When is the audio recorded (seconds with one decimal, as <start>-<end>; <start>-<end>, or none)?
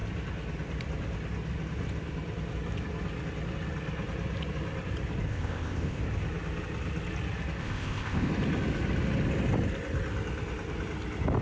0.0-5.3; 6.0-7.6; 8.3-11.4